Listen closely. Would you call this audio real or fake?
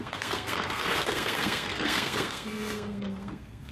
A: fake